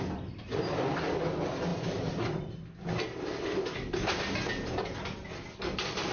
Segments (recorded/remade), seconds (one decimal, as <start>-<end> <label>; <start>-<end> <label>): 0.0-6.1 recorded